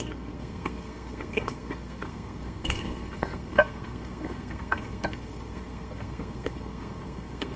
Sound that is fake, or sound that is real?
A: fake